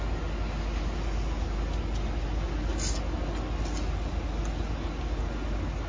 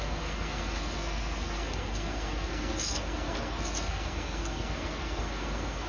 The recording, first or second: first